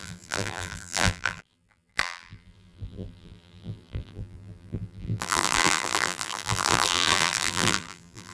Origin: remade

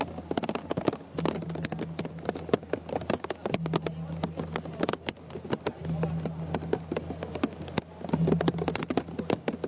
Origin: recorded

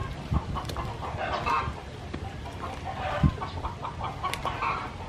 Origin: recorded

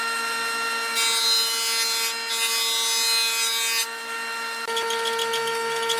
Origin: recorded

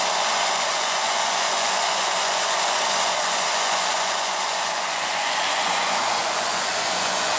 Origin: remade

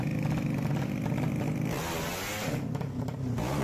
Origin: recorded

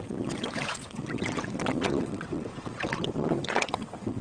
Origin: remade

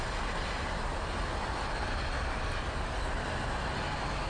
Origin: recorded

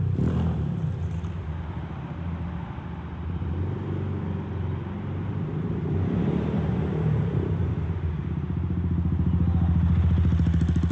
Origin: recorded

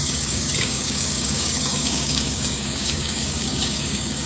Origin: remade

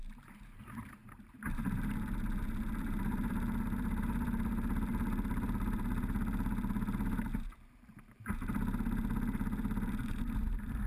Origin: remade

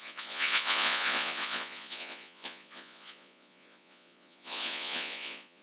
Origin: remade